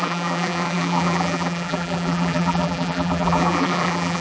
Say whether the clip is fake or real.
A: fake